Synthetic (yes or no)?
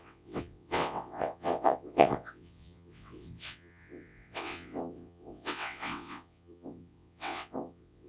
yes